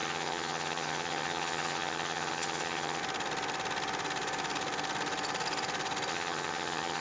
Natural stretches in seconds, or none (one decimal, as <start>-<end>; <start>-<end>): 3.0-6.1